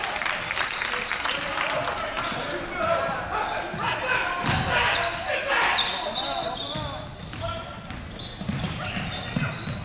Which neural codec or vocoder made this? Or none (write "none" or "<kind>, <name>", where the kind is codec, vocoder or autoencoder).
none